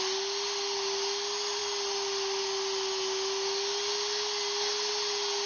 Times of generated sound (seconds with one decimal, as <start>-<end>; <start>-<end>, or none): none